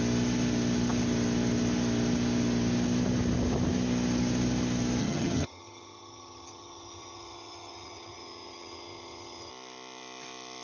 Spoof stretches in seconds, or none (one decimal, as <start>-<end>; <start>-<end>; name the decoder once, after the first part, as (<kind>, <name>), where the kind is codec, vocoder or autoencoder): 5.0-9.5 (vocoder, HiFi-GAN)